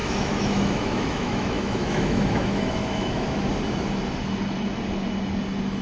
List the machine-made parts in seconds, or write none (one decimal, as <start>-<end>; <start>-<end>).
0.0-3.5

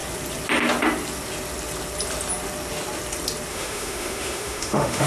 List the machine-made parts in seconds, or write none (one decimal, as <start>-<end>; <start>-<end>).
3.5-5.1

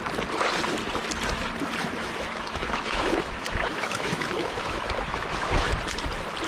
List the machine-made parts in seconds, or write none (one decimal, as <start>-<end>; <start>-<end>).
1.8-5.7

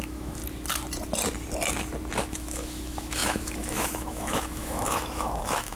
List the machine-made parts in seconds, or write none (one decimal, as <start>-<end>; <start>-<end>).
0.0-0.4; 2.2-5.8

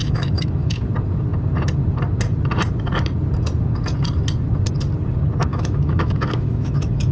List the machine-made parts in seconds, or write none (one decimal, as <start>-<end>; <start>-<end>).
0.0-0.8; 5.5-7.1

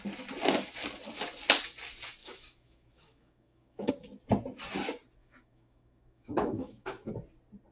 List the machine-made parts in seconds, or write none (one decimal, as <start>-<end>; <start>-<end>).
2.2-3.9; 5.2-7.1

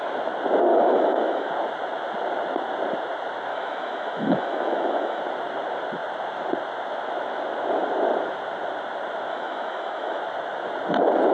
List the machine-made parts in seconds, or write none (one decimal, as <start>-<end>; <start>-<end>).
0.7-1.5; 3.5-5.2; 9.3-10.2